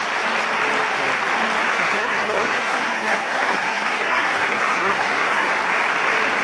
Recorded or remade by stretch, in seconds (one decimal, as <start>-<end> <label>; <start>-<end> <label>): 0.0-1.7 recorded; 1.7-5.5 remade; 5.5-6.4 recorded